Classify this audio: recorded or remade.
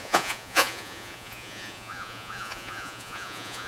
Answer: remade